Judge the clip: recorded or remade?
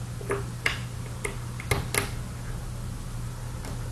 recorded